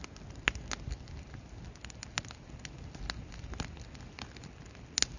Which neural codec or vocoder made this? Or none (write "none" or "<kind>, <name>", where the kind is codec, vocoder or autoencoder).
none